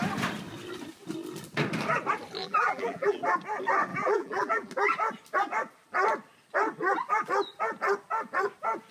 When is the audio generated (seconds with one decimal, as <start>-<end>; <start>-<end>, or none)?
2.4-3.2; 3.9-4.7